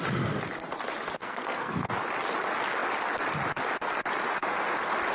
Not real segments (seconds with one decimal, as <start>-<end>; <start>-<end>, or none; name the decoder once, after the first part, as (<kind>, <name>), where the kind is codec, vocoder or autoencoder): 1.2-1.9 (codec, SNAC)